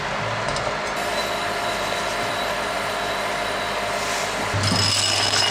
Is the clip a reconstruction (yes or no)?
no